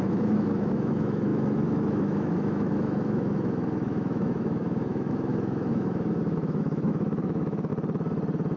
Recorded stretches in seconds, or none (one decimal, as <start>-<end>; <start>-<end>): 7.7-8.6